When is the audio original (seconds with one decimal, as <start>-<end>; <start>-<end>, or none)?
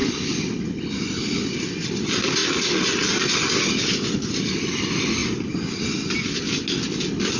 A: 0.0-7.4